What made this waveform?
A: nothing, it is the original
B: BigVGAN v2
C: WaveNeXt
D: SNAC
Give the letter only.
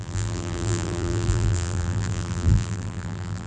B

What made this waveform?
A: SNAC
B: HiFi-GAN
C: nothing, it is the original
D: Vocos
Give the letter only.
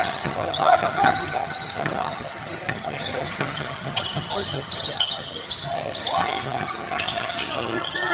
B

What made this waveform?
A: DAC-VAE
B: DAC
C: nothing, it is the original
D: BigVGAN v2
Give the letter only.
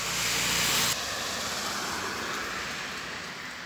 C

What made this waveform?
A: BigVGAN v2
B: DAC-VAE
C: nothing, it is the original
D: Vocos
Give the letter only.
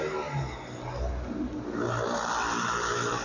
C